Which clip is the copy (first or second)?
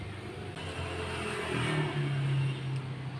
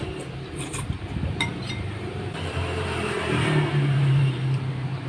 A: second